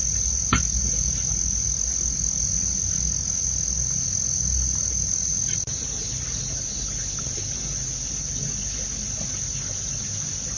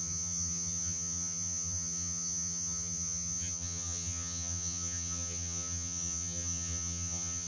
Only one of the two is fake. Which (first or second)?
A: second